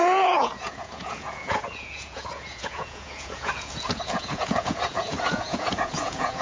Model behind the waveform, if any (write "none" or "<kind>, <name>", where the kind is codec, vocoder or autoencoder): vocoder, Vocos